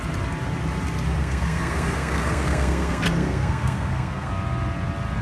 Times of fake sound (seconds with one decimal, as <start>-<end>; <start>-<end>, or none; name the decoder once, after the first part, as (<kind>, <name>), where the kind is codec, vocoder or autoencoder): 1.2-4.3 (codec, SNAC)